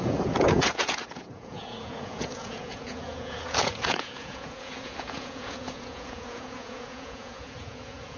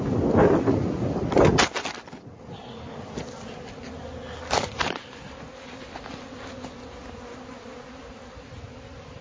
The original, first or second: second